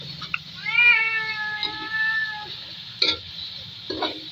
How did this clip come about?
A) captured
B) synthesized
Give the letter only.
A